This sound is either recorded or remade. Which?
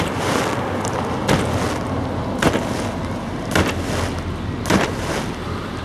recorded